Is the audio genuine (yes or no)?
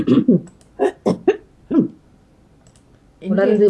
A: yes